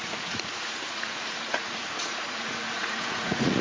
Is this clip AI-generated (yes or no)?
yes